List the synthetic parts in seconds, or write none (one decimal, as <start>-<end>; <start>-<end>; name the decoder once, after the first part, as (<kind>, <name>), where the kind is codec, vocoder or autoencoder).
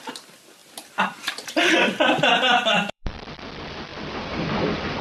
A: 0.6-3.2 (vocoder, BigVGAN v2); 3.9-5.0